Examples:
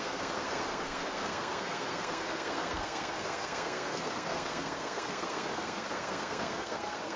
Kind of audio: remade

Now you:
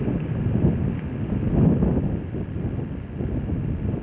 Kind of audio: recorded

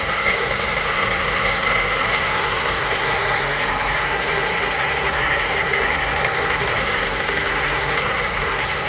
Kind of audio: remade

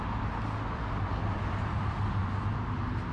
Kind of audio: recorded